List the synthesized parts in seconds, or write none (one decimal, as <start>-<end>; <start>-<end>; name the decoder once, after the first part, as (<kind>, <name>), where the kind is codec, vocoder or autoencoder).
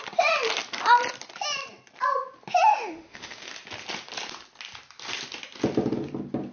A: 2.7-3.5 (autoencoder, DAC-VAE)